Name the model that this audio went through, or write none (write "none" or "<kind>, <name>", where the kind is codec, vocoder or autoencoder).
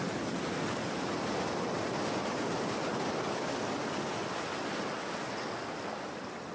none